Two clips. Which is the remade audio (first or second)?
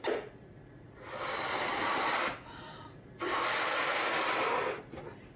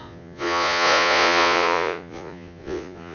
second